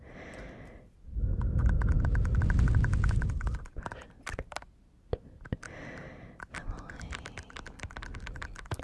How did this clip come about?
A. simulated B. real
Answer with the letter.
B